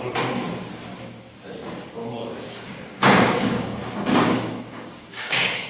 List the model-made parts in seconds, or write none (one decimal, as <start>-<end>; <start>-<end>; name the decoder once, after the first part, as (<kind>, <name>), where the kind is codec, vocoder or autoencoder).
2.0-5.7 (codec, DAC)